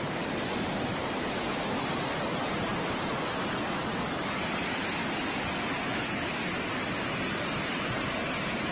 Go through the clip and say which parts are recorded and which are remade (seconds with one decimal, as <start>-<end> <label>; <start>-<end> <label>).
0.0-2.7 remade; 2.7-4.6 recorded; 4.6-5.0 remade; 5.0-7.4 recorded; 7.4-8.7 remade